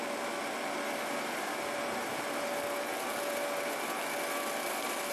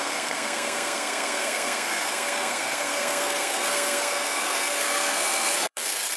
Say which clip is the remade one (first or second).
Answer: second